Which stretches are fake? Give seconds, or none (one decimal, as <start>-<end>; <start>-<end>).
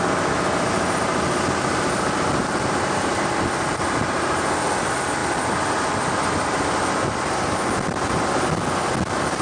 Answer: none